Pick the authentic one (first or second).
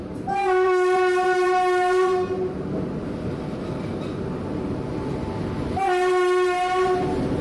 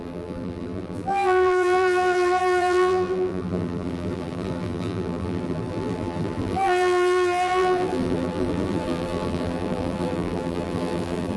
first